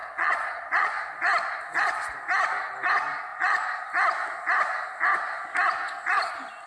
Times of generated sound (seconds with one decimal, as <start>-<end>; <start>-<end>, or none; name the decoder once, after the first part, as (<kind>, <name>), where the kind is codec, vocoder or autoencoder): 0.0-0.9 (vocoder, Vocos)